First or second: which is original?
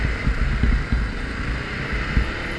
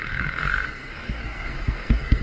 first